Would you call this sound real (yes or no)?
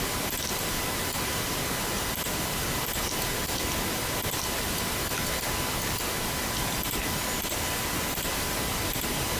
yes